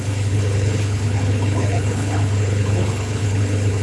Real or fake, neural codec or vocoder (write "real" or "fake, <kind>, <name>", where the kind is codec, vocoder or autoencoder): fake, codec, HILCodec